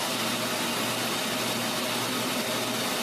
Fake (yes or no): no